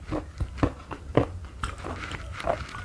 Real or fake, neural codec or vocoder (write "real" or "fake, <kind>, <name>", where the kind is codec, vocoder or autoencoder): real